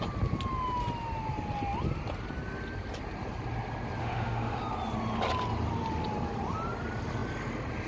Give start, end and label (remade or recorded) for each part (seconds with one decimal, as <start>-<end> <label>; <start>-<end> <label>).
0.0-4.0 recorded; 4.0-4.6 remade; 4.6-7.9 recorded